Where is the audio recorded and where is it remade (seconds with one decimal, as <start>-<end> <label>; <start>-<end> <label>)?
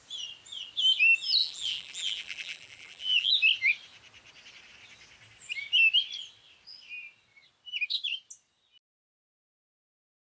0.0-1.4 recorded; 1.4-3.3 remade; 3.3-10.2 recorded